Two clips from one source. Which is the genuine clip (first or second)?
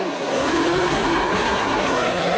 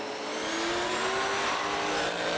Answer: second